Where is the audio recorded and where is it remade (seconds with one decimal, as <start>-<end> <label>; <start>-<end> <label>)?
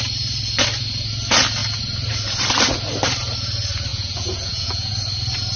0.0-3.9 recorded; 3.9-4.9 remade; 4.9-5.6 recorded